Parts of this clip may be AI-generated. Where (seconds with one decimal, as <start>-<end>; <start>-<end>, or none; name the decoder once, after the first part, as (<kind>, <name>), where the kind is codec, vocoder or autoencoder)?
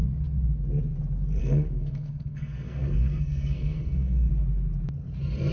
1.4-4.3 (codec, SNAC)